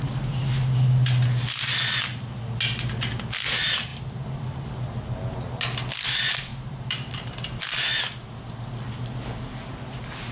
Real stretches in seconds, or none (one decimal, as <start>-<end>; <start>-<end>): 0.0-3.9; 4.8-6.5; 8.0-10.3